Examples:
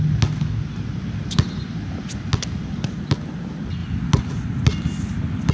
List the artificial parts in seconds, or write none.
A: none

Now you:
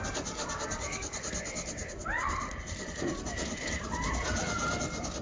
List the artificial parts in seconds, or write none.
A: 1.8-3.1

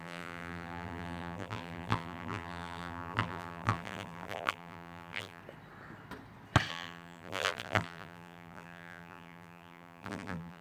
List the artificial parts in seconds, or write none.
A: 0.0-5.4; 6.7-10.6

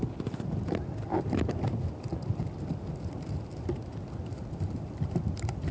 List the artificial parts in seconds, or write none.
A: 4.3-5.7

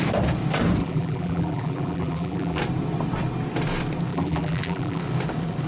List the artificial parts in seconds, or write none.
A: 0.8-2.6; 4.1-5.0

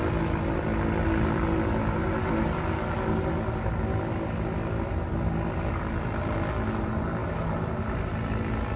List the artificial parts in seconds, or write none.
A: none